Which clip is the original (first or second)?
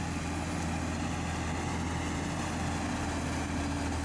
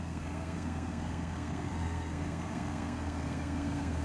first